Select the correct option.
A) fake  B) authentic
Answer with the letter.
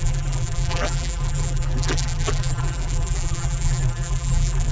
A